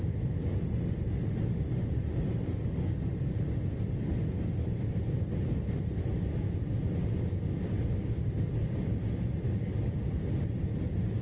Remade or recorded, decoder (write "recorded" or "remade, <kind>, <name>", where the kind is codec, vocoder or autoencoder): recorded